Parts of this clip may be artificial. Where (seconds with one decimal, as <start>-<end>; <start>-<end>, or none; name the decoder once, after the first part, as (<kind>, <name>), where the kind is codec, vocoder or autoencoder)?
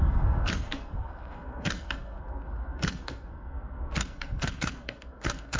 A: 0.0-5.6 (codec, SNAC)